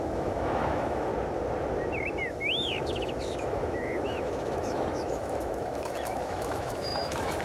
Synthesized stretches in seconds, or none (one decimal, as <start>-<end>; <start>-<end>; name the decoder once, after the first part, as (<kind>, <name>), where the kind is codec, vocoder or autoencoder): 0.0-1.1 (autoencoder, DAC-VAE); 2.3-7.4